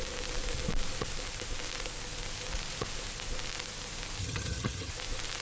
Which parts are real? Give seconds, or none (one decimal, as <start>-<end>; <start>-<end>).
0.0-4.2; 4.9-5.4

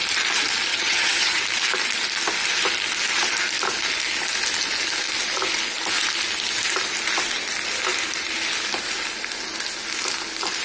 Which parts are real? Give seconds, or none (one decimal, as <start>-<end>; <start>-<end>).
0.0-0.7; 1.4-10.6

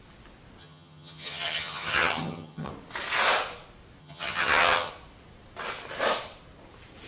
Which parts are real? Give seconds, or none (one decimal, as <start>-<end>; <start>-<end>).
0.0-0.6; 2.7-4.0; 4.9-7.1